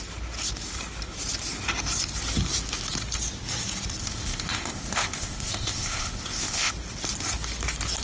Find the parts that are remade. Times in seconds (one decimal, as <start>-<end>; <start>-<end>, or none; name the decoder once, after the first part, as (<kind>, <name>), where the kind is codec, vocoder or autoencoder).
4.0-6.7 (codec, ZipCodec)